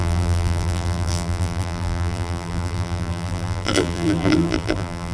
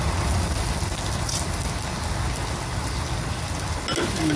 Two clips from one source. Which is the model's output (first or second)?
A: first